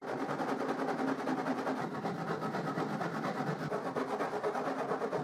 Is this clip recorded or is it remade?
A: recorded